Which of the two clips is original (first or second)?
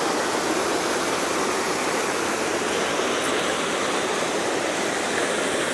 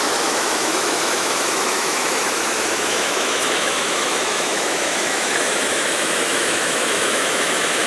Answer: first